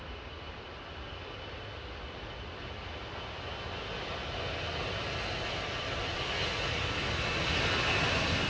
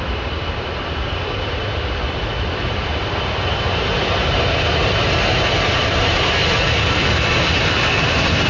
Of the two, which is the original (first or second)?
first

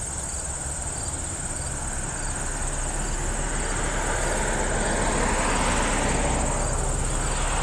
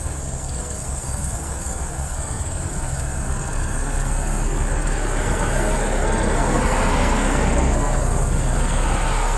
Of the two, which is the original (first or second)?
first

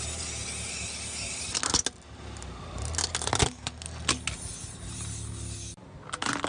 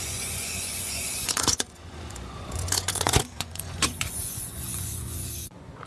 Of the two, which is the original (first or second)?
first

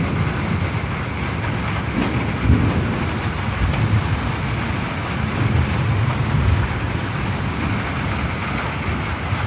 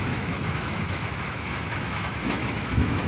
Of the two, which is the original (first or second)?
first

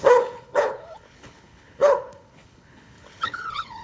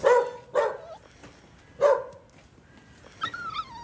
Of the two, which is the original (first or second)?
second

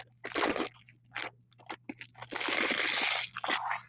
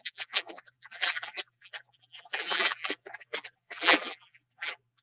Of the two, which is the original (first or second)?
first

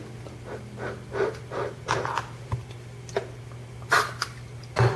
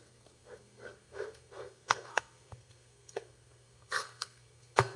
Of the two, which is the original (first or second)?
first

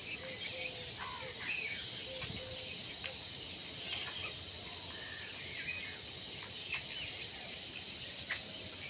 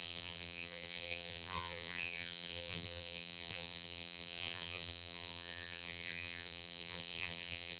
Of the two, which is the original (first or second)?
first